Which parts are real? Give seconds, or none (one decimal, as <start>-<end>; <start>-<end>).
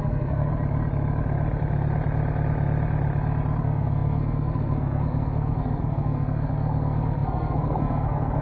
0.5-3.6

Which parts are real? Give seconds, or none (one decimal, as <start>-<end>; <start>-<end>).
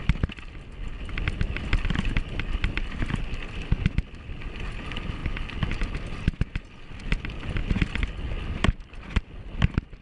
0.0-10.0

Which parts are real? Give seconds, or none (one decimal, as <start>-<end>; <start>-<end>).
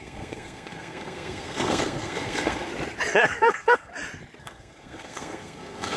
2.7-3.2; 3.9-4.4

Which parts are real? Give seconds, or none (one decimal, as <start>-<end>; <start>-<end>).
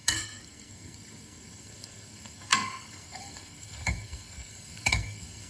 none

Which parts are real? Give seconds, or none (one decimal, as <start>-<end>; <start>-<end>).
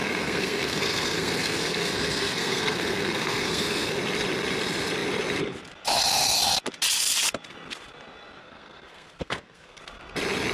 4.0-8.4; 9.8-10.5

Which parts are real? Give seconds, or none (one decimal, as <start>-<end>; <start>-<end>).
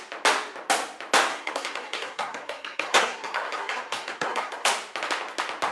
0.0-1.3; 4.7-5.7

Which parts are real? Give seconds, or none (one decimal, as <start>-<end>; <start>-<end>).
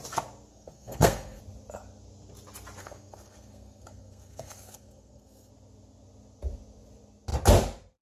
0.0-0.5; 1.4-2.8; 5.5-8.0